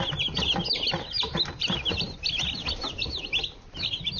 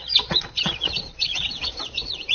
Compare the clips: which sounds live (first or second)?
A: first